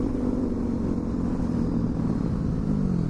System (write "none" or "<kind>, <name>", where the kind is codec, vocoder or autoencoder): none